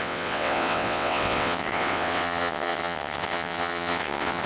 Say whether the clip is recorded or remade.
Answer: remade